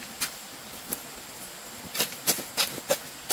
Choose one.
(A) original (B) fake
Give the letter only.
A